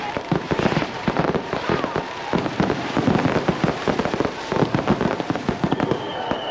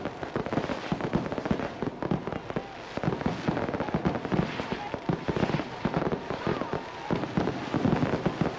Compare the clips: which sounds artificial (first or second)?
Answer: first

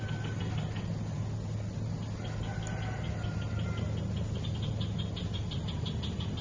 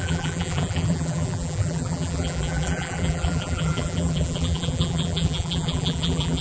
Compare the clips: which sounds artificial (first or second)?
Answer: second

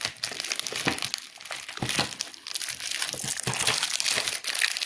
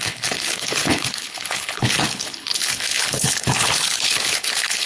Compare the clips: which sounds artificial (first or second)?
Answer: second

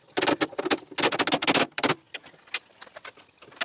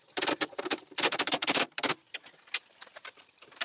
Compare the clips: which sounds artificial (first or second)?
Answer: second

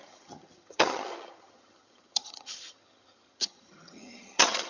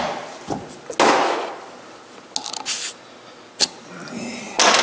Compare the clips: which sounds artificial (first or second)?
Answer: first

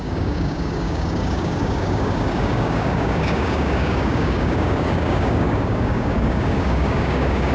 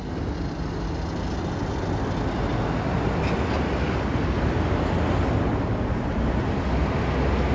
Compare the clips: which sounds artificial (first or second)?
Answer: first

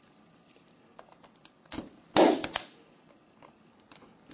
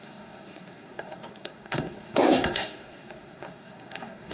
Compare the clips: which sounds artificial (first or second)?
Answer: second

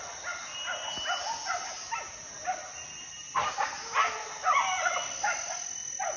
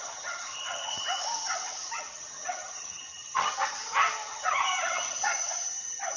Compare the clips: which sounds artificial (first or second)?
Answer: second